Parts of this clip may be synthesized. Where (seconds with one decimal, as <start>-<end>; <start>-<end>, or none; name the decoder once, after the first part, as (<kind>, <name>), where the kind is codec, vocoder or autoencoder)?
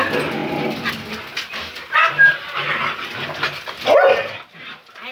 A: none